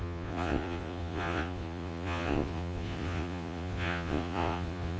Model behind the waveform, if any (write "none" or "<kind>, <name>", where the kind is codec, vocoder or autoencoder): vocoder, Vocos